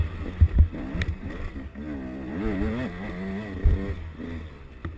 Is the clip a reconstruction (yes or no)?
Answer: no